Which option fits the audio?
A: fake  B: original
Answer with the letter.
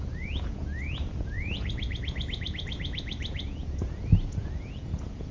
A